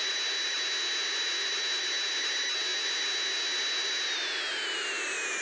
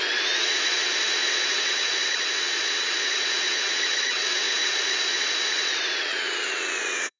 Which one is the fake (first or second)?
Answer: second